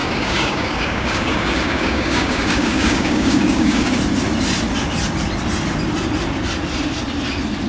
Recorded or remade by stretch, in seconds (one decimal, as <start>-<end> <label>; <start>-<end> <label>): 0.0-3.9 remade; 3.9-7.7 recorded